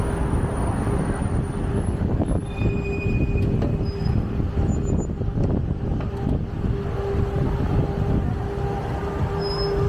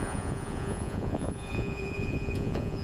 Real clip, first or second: first